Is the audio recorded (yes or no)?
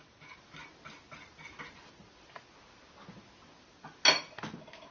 yes